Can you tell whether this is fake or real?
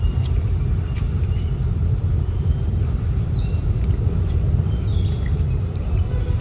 fake